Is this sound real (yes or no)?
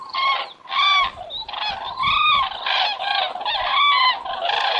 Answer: yes